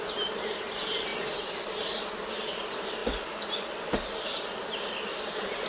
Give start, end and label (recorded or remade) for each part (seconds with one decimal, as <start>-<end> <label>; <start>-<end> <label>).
0.0-5.7 recorded